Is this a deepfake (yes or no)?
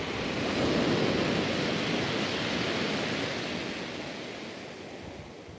no